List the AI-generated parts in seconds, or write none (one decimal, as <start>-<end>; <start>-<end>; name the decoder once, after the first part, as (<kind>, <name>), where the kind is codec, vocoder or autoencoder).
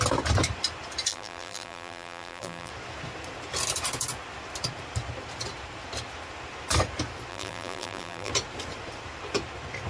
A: 1.1-2.7 (vocoder, BigVGAN v2); 7.3-8.3